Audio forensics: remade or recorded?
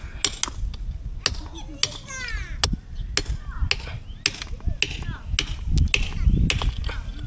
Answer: recorded